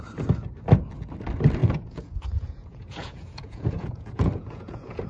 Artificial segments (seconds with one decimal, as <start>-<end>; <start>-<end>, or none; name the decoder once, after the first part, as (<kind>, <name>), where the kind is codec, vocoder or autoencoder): 1.6-5.1 (vocoder, Vocos)